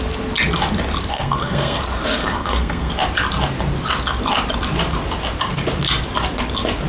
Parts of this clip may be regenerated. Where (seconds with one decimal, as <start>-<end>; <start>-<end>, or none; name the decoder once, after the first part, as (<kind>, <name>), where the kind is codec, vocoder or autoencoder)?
1.1-1.8 (codec, SNAC); 2.2-2.9